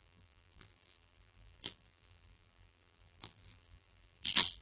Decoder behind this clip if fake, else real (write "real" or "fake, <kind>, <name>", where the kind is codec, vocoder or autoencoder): fake, vocoder, BigVGAN v2